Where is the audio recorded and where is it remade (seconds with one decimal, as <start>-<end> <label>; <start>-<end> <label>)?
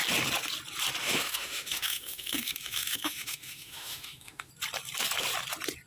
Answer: 0.0-1.0 recorded; 1.0-4.5 remade; 4.5-5.9 recorded